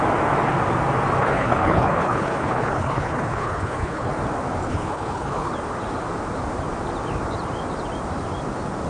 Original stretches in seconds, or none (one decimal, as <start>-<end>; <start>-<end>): 0.0-1.2; 4.1-4.6; 5.5-8.9